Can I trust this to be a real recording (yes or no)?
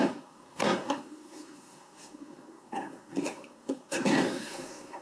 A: no